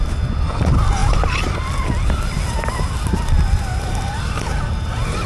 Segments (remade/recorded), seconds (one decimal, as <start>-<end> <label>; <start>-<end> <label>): 0.0-5.3 recorded